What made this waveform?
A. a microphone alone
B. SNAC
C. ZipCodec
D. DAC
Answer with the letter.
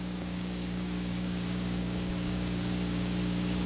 D